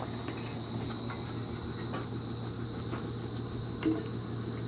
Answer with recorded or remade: recorded